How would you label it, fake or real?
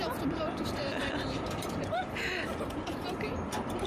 fake